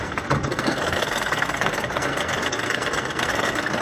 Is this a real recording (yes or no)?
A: no